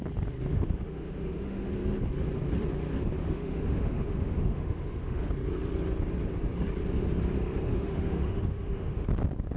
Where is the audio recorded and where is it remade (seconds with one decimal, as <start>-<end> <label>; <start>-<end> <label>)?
0.0-0.5 recorded; 0.5-1.7 remade; 1.7-3.2 recorded; 3.2-5.3 remade; 5.3-7.7 recorded; 7.7-9.1 remade; 9.1-9.6 recorded